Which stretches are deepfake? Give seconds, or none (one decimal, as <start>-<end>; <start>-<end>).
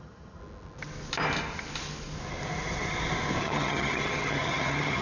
0.0-0.4; 3.4-5.0